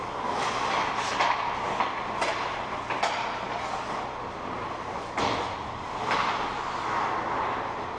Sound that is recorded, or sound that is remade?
recorded